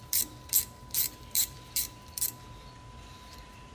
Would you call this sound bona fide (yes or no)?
no